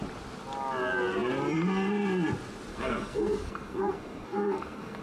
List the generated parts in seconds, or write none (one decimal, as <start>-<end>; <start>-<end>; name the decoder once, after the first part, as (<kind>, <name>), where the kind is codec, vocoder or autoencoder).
2.7-5.0 (codec, SNAC)